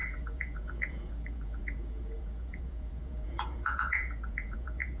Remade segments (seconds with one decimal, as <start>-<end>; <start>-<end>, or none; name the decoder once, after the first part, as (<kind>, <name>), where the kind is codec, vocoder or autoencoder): 0.0-5.0 (vocoder, Vocos)